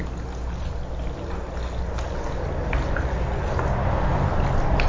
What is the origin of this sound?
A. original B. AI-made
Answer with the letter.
A